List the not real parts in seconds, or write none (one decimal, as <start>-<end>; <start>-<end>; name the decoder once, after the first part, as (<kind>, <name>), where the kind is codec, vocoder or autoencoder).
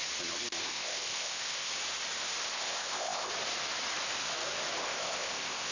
0.6-1.7 (codec, ZipCodec); 2.4-3.3; 4.8-5.7